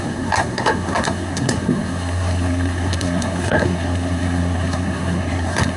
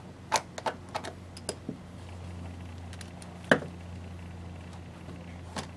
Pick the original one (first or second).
second